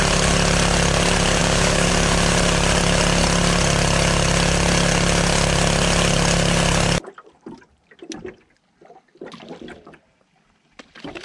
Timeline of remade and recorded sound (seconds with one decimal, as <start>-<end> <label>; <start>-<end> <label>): 0.0-1.4 recorded; 1.4-1.9 remade; 1.9-11.2 recorded